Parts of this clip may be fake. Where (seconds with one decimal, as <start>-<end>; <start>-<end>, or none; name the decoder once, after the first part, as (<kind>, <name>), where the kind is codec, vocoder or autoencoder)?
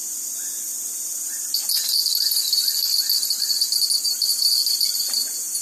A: none